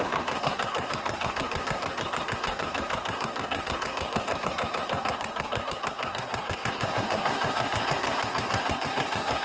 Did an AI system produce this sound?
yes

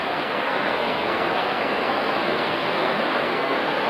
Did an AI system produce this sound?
yes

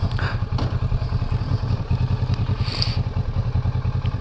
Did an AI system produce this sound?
no